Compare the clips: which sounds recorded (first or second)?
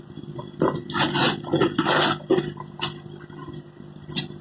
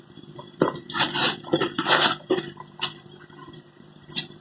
first